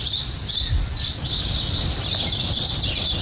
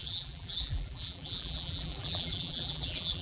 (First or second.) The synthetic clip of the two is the second